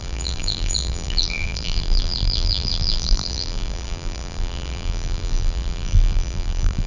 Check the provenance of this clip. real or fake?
fake